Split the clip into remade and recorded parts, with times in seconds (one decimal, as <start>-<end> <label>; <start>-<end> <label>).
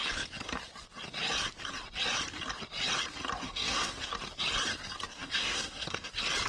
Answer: 0.0-3.4 recorded; 3.4-4.1 remade; 4.1-5.1 recorded; 5.1-6.1 remade; 6.1-6.5 recorded